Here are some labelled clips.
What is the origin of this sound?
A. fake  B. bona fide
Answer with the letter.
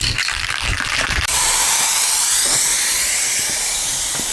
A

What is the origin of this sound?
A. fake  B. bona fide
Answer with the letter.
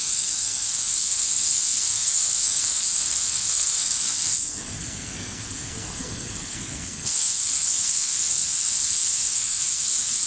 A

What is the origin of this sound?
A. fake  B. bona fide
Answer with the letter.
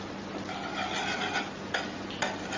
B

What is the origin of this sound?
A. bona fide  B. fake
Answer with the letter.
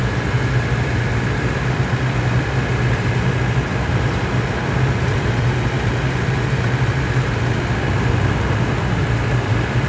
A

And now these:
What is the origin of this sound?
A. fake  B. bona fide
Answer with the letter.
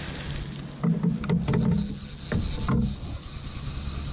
B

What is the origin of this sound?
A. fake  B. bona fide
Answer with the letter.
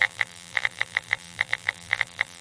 A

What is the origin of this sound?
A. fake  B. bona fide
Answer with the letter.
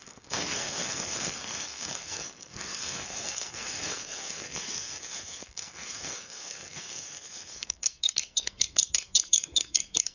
A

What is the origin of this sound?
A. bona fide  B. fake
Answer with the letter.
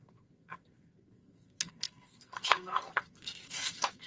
B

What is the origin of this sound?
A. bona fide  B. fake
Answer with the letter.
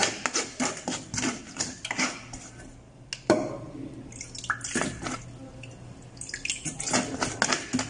A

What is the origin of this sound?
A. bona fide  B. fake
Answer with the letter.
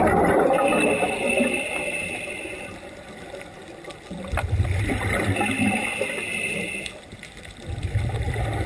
A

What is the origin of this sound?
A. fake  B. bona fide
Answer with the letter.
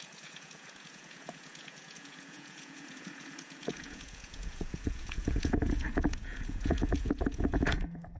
A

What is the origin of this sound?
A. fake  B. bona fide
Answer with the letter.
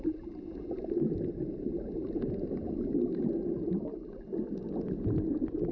B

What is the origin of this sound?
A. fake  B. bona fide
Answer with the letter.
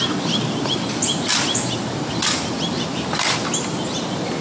B